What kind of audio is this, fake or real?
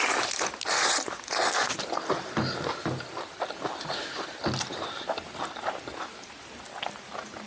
real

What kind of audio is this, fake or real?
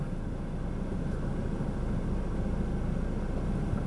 real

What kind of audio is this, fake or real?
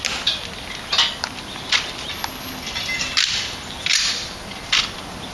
real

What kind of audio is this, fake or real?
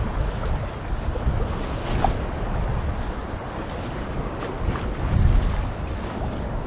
real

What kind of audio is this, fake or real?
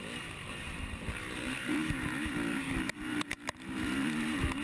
fake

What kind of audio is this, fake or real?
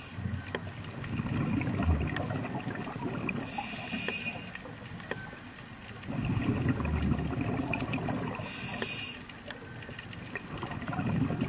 real